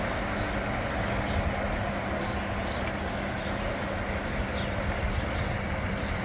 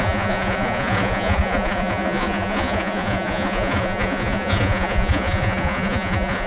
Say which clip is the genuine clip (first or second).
first